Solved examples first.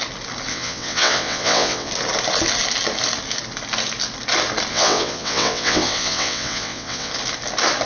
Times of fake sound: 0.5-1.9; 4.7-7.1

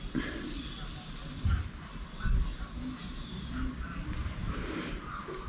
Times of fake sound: none

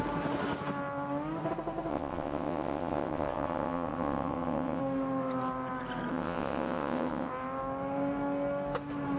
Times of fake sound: 1.9-4.8; 6.1-7.3

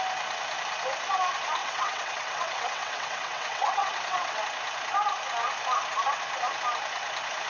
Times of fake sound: 1.6-4.4

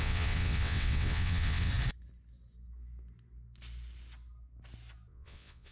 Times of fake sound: 0.0-1.7; 5.1-5.7

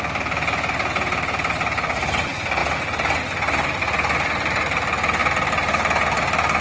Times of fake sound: none

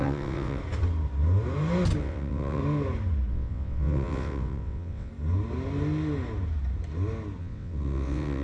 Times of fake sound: 0.0-0.6; 2.0-2.6; 3.3-5.1; 7.4-8.4

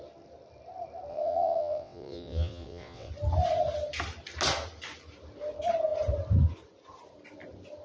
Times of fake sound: 1.1-3.1